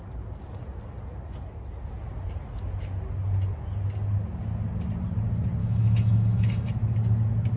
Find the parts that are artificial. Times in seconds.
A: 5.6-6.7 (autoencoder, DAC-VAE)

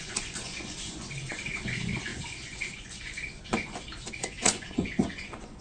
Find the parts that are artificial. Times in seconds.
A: 0.0-5.6 (vocoder, Vocos)

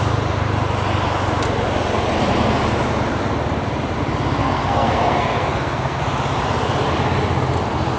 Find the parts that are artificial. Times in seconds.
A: 4.4-6.0 (codec, SNAC)